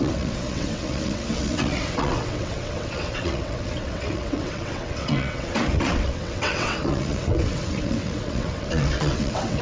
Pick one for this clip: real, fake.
fake